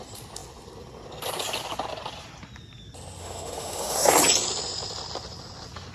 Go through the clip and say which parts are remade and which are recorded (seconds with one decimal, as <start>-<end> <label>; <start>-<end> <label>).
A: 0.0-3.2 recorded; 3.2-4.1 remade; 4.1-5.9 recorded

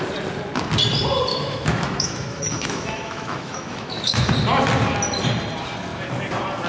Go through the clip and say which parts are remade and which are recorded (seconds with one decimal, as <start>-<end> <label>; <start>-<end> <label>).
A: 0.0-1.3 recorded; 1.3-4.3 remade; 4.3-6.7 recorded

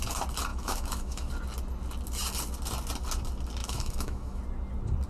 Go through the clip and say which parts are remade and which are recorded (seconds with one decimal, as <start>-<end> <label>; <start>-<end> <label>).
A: 0.0-0.5 recorded; 0.5-1.3 remade; 1.3-3.6 recorded; 3.6-4.4 remade; 4.4-5.1 recorded

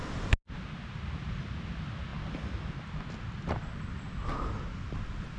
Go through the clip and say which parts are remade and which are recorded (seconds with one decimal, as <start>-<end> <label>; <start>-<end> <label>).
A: 0.0-5.4 recorded

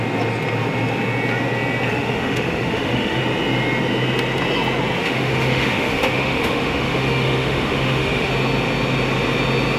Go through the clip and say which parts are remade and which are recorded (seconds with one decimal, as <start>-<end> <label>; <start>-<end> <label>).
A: 0.0-1.9 recorded; 1.9-3.2 remade; 3.2-5.0 recorded; 5.0-8.3 remade; 8.3-9.8 recorded